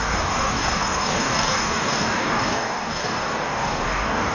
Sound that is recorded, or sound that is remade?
remade